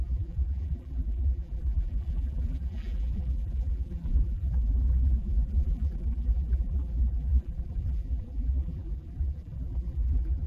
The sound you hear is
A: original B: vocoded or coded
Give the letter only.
B